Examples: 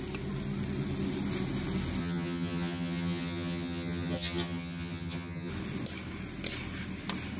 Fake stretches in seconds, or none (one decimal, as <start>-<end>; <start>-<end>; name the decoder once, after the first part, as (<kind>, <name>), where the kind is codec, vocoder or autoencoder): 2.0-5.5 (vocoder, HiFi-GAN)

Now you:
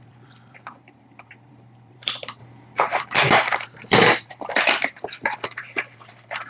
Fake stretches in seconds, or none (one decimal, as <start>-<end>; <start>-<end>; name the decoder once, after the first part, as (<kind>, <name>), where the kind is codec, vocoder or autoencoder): 0.0-2.4 (vocoder, BigVGAN v2); 3.3-6.5

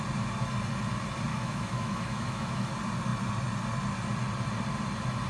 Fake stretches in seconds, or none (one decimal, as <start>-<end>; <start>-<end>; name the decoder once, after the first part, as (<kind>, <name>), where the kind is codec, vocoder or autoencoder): 1.3-2.7 (autoencoder, DAC-VAE)

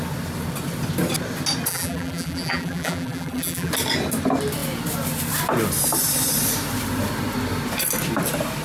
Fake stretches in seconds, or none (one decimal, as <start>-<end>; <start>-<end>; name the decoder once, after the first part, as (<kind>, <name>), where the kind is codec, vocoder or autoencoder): 1.7-3.7 (vocoder, BigVGAN v2)